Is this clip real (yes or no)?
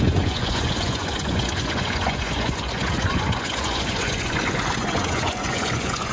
no